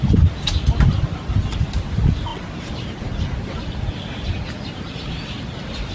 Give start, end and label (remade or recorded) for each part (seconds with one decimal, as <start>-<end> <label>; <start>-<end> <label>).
0.0-5.9 recorded